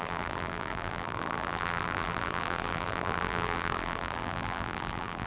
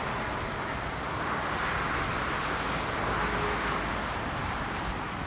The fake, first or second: first